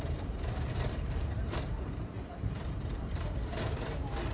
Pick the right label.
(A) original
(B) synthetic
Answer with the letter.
B